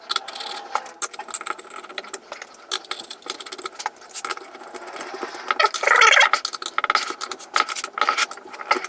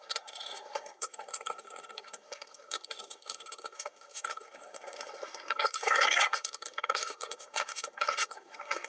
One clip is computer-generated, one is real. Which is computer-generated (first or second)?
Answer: second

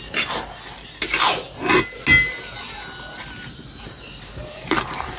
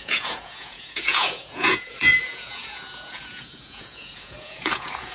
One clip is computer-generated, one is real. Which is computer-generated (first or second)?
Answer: second